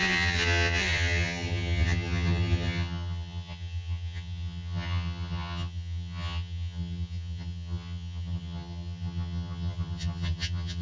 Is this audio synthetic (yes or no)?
yes